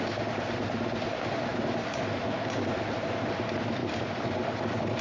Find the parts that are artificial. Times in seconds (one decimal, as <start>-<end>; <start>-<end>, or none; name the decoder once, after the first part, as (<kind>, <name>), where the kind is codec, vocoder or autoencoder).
1.5-2.2 (vocoder, BigVGAN v2); 3.8-5.0